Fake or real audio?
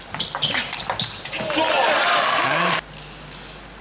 real